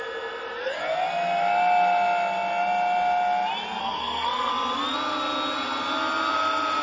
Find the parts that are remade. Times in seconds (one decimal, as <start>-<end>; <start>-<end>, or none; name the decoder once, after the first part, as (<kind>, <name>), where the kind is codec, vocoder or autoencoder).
3.8-4.5 (codec, SNAC)

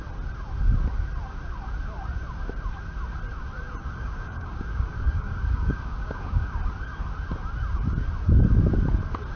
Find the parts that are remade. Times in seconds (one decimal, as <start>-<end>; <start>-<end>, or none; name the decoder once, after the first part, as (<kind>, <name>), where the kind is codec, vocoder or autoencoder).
3.8-6.6 (codec, DAC)